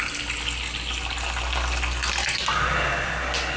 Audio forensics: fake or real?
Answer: real